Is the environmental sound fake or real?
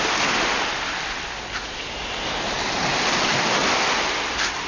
real